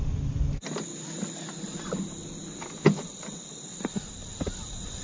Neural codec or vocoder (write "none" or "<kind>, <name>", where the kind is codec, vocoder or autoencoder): none